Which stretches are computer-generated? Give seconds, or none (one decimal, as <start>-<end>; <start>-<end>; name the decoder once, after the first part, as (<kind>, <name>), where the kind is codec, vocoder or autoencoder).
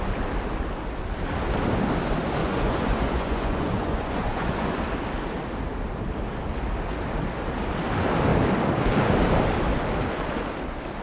2.4-4.8 (vocoder, Vocos)